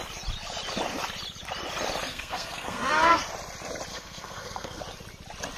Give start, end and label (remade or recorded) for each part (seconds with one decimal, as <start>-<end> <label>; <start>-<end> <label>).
0.0-2.1 recorded; 2.1-3.2 remade; 3.2-3.9 recorded; 3.9-4.8 remade; 4.8-5.6 recorded